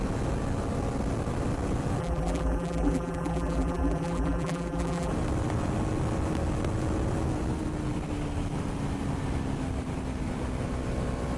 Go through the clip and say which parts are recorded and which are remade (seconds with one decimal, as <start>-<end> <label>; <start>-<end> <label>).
0.0-2.0 recorded; 2.0-5.1 remade; 5.1-11.4 recorded